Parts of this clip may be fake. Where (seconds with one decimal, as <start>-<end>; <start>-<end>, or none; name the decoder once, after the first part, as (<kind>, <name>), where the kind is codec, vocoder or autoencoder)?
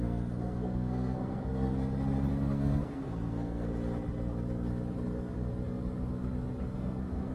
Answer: 0.0-1.7 (codec, SNAC); 2.3-3.7; 6.6-7.3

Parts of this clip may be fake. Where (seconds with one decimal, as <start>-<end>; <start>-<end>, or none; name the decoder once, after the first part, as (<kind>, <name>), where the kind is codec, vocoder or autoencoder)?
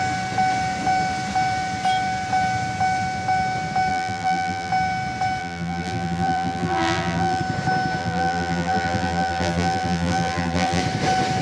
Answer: 3.9-4.7 (vocoder, BigVGAN v2); 5.4-7.4; 8.0-10.8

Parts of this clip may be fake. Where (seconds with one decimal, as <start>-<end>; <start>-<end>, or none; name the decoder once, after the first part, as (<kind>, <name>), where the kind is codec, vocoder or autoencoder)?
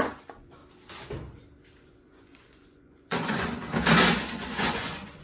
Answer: 0.0-0.6 (vocoder, Vocos); 1.8-3.6; 4.4-5.2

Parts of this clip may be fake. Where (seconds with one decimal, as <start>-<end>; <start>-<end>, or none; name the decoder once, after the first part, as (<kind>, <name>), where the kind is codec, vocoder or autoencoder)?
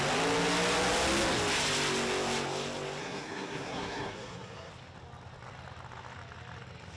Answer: 3.0-4.7 (codec, SNAC)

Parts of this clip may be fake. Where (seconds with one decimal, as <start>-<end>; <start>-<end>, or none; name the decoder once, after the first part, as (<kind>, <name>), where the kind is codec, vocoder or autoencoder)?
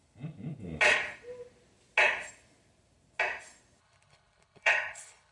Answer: 3.8-5.3 (codec, HILCodec)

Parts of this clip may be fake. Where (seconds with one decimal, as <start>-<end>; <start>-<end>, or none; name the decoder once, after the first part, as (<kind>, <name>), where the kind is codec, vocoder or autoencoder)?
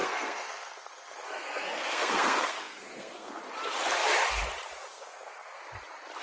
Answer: 0.0-3.4 (codec, SNAC); 4.9-5.6